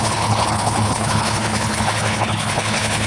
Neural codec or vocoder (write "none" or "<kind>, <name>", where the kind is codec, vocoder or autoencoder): codec, HILCodec